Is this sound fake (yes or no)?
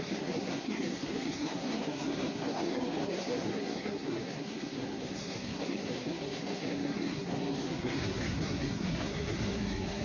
yes